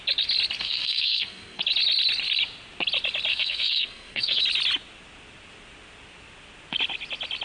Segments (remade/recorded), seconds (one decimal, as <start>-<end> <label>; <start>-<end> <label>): 0.0-0.6 recorded; 0.6-1.6 remade; 1.6-3.3 recorded; 3.3-4.4 remade; 4.4-7.4 recorded